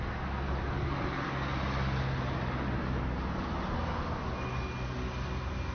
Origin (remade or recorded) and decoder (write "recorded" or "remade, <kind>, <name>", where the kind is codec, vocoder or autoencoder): recorded